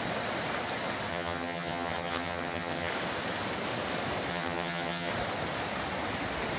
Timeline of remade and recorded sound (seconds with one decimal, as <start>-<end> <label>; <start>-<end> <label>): 0.0-1.1 recorded; 1.1-2.9 remade; 2.9-4.3 recorded; 4.3-5.1 remade; 5.1-6.6 recorded